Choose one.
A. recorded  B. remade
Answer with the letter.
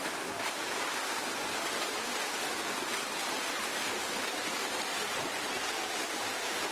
A